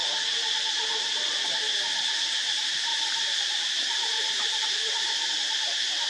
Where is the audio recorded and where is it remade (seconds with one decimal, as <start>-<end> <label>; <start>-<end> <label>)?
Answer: 0.0-2.9 recorded; 2.9-5.3 remade; 5.3-6.1 recorded